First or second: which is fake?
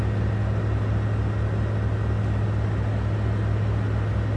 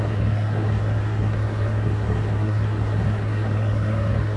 second